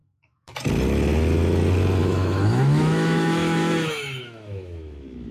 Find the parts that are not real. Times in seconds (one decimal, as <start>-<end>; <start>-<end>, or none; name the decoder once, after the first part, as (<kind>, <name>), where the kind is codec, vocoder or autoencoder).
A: 0.0-0.6 (autoencoder, DAC-VAE); 2.0-5.3